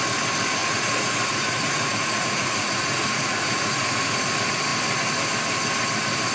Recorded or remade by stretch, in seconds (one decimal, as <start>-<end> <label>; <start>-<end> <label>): 0.0-0.6 recorded; 0.6-4.3 remade; 4.3-6.3 recorded